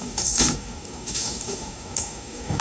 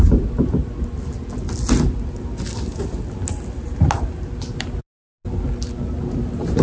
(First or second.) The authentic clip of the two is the second